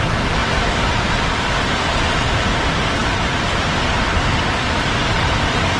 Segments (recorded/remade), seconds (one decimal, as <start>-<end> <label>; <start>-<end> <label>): 0.0-5.8 recorded